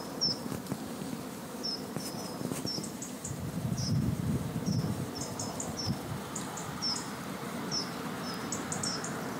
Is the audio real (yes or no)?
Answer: no